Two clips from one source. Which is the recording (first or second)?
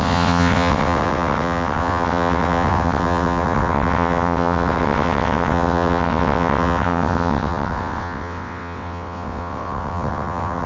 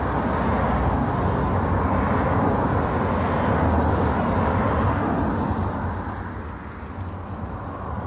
second